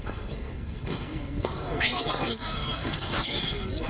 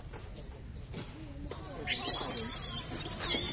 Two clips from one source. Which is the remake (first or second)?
first